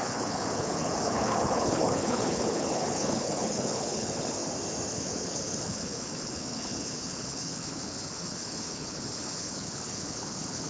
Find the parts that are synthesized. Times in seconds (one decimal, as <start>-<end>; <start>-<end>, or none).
0.0-4.4; 4.9-10.7